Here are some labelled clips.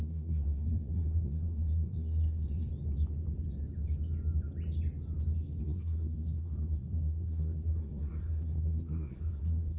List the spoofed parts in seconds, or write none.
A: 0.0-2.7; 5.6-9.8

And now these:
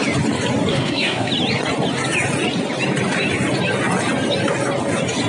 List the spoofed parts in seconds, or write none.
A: 0.7-1.3